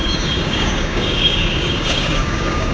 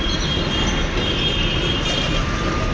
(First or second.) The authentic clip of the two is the second